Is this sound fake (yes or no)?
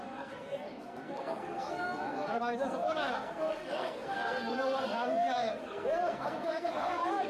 yes